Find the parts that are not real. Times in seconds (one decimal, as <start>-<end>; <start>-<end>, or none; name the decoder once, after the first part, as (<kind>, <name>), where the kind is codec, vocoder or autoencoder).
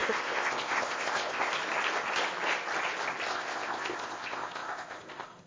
0.0-1.5 (codec, ZipCodec); 3.3-5.5